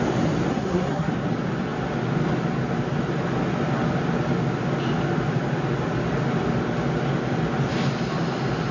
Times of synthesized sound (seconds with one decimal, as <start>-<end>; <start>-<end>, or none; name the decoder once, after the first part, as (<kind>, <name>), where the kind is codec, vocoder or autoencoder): 0.5-1.1 (codec, SNAC)

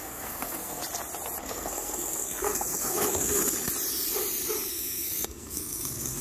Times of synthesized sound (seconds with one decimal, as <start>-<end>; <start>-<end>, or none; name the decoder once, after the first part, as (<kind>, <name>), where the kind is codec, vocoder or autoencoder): 0.0-0.8 (codec, SNAC); 1.4-3.4; 4.7-6.2

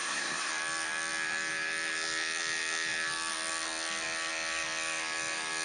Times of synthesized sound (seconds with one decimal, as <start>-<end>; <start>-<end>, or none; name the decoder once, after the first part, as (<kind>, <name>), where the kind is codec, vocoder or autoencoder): 0.0-0.5 (codec, SNAC)